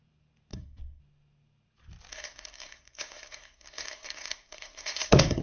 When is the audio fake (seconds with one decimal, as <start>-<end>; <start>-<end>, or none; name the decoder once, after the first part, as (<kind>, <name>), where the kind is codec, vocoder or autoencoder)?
0.5-1.0 (codec, SNAC); 2.1-5.4